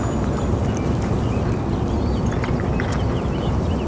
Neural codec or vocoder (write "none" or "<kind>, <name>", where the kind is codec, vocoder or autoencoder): none